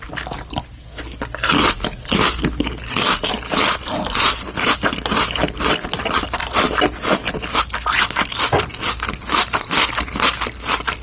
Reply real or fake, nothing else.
real